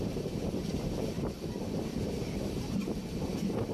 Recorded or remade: remade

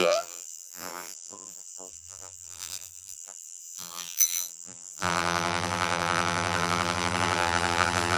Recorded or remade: remade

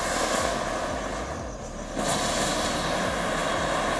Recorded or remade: recorded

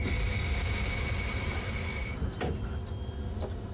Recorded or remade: recorded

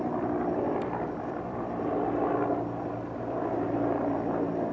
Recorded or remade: remade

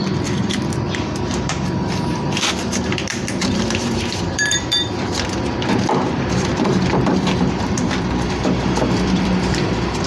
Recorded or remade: remade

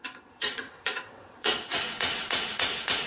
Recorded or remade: remade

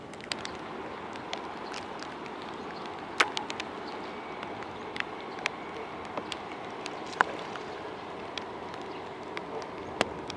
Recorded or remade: recorded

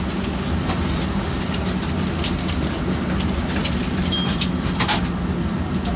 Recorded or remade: recorded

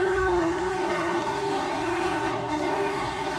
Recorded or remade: remade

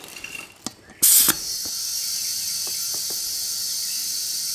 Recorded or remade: recorded